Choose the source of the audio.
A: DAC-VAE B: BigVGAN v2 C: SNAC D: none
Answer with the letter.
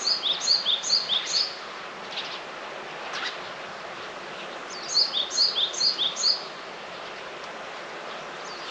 D